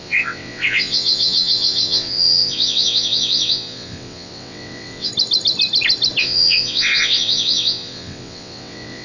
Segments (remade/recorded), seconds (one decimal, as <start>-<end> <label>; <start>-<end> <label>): 0.0-5.1 remade; 5.1-6.2 recorded; 6.2-9.0 remade